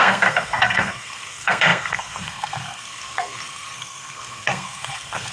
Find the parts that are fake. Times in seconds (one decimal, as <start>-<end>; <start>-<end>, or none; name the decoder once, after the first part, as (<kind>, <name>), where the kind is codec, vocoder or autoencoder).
0.0-5.3 (codec, SNAC)